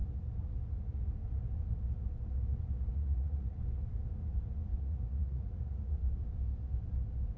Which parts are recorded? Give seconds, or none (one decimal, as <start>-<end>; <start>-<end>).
0.0-2.9; 3.6-4.8; 6.0-7.4